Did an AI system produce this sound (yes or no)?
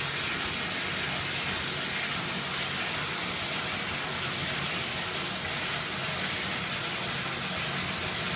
no